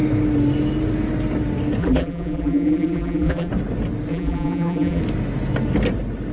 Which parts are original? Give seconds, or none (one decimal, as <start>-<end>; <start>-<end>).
0.0-1.8; 3.5-4.1; 5.0-6.3